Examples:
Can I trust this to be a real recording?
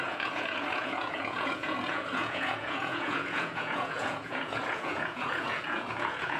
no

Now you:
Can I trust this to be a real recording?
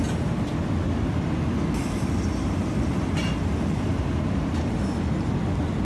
yes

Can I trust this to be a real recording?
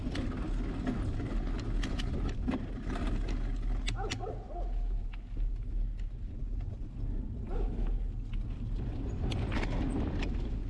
yes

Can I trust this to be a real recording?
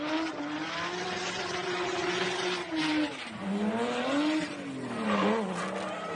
yes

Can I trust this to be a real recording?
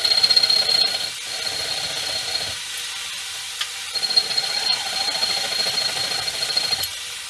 yes